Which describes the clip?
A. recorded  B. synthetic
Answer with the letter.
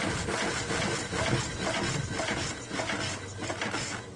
A